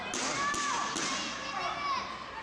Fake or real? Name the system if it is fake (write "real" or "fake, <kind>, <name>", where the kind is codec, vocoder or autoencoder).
real